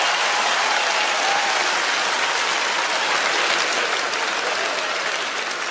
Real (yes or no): yes